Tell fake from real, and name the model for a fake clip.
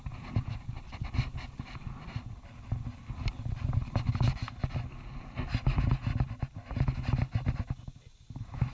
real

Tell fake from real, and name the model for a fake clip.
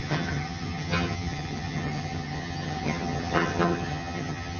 fake, vocoder, HiFi-GAN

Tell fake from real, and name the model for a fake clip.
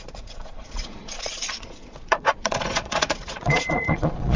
fake, vocoder, Vocos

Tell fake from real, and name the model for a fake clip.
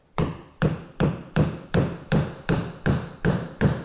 fake, vocoder, BigVGAN v2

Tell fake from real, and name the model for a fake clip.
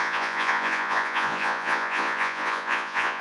fake, vocoder, Vocos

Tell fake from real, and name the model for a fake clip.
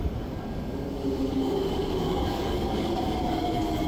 fake, codec, DAC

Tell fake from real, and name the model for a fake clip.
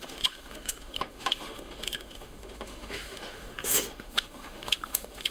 fake, autoencoder, DAC-VAE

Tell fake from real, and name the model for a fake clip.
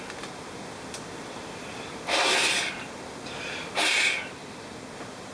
real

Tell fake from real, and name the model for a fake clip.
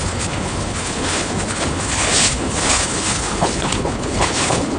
fake, codec, HILCodec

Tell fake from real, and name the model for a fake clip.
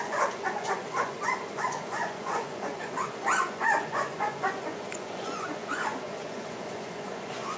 fake, vocoder, Vocos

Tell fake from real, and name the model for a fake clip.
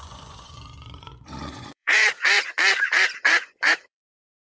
fake, vocoder, Vocos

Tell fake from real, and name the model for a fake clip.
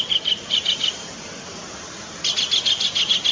real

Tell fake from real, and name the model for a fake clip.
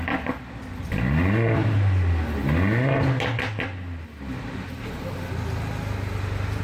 real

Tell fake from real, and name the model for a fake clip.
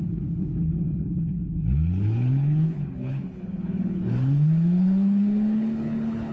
fake, codec, HILCodec